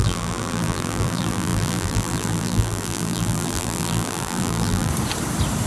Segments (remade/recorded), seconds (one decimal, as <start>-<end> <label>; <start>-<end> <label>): 0.0-4.9 remade; 4.9-5.7 recorded